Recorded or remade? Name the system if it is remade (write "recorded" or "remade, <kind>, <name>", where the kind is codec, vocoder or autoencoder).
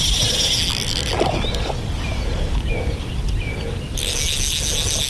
recorded